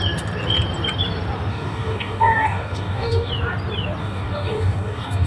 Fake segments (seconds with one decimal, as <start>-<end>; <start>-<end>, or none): 1.5-3.3; 4.0-5.3